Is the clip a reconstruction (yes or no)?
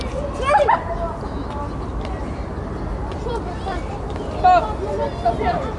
no